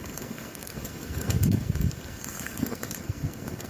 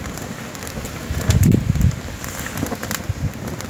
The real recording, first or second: second